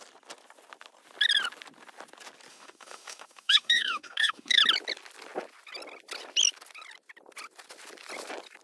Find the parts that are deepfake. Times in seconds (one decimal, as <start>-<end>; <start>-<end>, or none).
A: 2.5-4.6